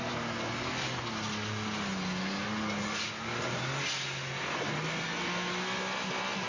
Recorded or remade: recorded